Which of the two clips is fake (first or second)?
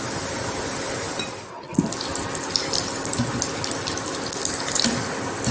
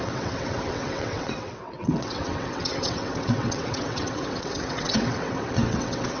second